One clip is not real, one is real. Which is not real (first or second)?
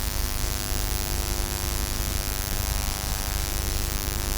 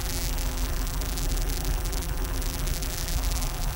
second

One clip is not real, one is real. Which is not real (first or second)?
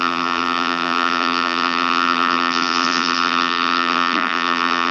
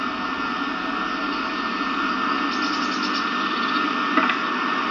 first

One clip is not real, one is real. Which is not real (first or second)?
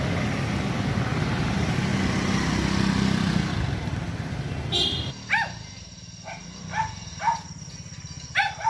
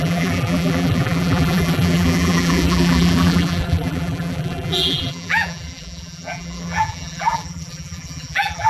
second